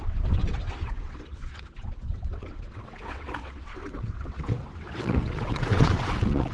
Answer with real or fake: fake